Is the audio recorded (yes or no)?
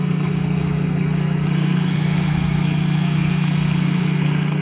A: no